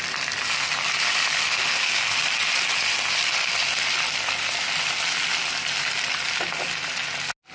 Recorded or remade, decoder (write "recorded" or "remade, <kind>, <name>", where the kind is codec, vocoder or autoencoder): recorded